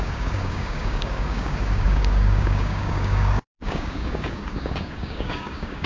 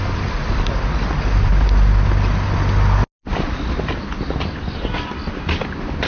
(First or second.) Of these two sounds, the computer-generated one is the first